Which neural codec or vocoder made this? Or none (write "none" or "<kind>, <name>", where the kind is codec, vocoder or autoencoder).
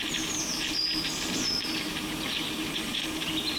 none